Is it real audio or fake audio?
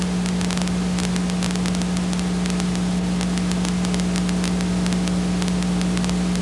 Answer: real